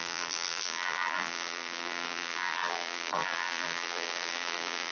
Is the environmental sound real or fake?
fake